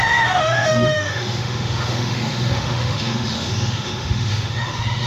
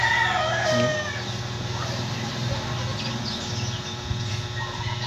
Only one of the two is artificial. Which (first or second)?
first